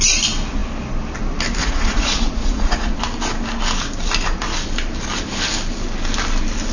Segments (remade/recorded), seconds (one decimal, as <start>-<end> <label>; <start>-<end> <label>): 0.0-1.6 recorded; 1.6-3.0 remade; 3.0-6.7 recorded